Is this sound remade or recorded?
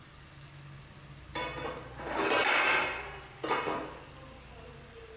recorded